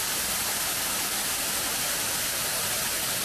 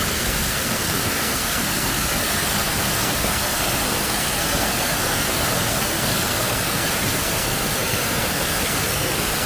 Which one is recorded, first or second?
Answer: first